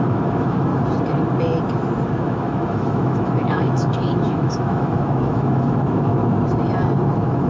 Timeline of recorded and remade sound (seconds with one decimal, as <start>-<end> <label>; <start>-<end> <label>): 0.0-0.7 remade; 0.7-2.2 recorded; 2.2-6.2 remade; 6.2-7.1 recorded; 7.1-7.5 remade